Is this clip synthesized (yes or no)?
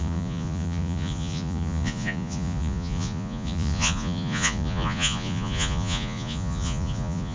yes